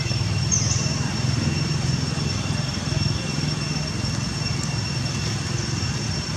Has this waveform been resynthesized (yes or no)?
yes